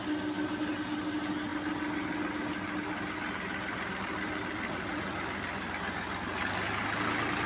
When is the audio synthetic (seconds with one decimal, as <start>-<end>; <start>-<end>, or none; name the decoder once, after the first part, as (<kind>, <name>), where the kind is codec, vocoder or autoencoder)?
4.7-5.2 (vocoder, Vocos)